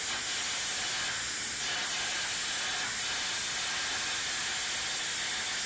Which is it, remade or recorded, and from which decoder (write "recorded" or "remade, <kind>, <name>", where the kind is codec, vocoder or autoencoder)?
recorded